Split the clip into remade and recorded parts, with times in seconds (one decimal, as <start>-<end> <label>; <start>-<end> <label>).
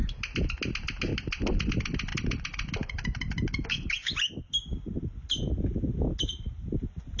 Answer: 0.0-7.2 recorded